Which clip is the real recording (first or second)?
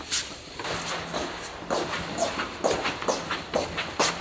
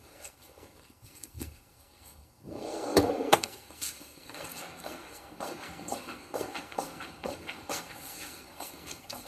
first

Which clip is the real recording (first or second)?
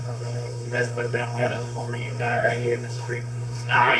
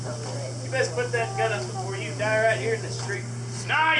second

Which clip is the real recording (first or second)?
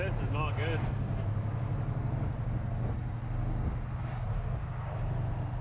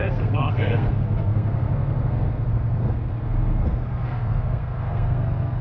first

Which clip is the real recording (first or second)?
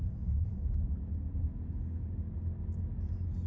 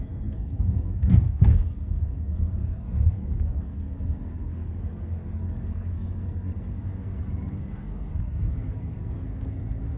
first